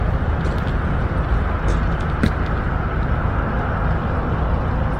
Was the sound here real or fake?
real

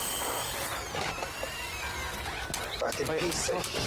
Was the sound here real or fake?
real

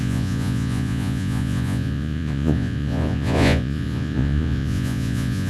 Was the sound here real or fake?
fake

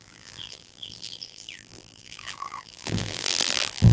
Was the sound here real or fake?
fake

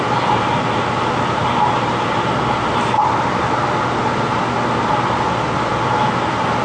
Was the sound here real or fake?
real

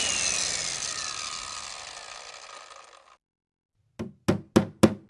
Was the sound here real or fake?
real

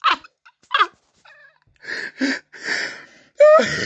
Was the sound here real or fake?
real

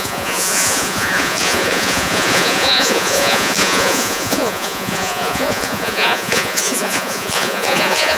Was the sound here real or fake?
fake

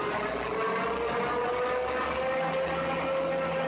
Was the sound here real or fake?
real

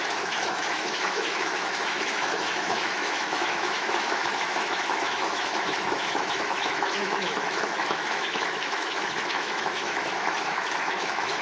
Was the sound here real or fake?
fake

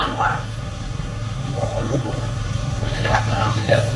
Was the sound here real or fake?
fake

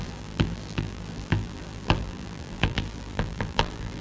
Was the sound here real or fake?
fake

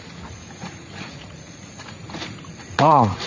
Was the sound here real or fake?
fake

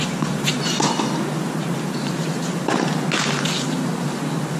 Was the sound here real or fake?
real